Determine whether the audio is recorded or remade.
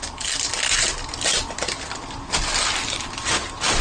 recorded